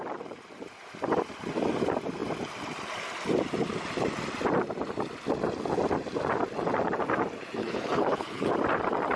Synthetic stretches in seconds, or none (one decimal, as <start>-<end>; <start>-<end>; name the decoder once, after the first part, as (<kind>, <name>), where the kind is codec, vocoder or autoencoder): 7.6-8.5 (codec, HILCodec)